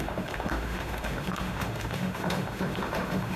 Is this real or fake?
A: fake